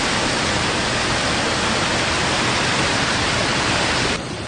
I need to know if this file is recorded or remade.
recorded